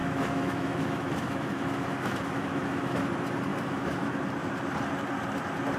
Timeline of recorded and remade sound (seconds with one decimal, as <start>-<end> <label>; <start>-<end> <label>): 0.0-3.0 remade; 3.0-3.5 recorded; 3.5-4.2 remade; 4.2-5.8 recorded